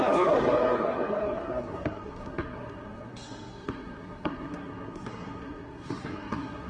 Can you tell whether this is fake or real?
fake